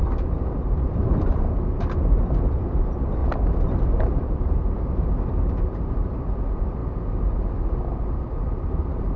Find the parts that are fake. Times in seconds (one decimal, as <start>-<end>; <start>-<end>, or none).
0.0-3.2; 3.9-6.8; 7.8-9.2